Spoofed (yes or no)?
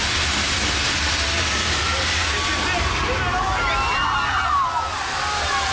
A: no